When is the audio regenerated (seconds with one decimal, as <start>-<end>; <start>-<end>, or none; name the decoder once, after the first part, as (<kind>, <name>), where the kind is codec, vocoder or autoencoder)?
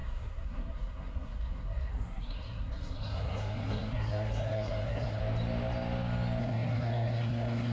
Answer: 0.0-5.2 (codec, SNAC); 6.4-7.7